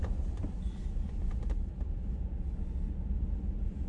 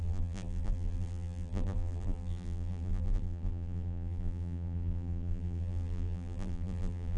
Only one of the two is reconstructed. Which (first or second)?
second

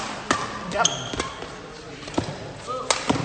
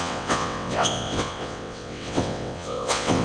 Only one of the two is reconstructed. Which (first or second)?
second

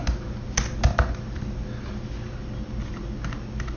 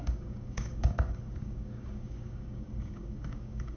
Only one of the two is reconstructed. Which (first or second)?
second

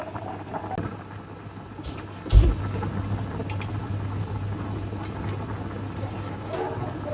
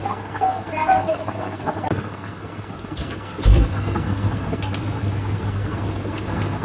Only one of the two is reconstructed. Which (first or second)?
second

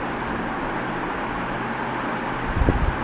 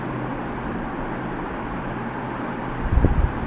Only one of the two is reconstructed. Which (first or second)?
second